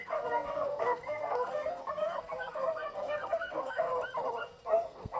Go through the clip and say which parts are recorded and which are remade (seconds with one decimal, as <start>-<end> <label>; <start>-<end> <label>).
0.0-3.9 remade; 3.9-4.4 recorded; 4.4-5.2 remade